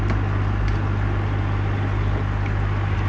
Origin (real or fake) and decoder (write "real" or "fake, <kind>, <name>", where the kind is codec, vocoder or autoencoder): real